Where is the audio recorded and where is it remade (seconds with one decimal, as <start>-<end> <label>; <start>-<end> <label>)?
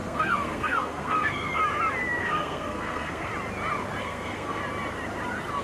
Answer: 0.0-1.6 remade; 1.6-2.2 recorded; 2.2-3.3 remade; 3.3-4.0 recorded; 4.0-4.6 remade; 4.6-5.6 recorded